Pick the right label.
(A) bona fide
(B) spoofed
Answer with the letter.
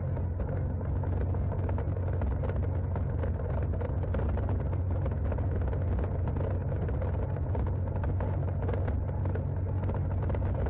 A